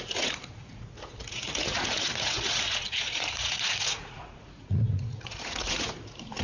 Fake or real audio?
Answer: fake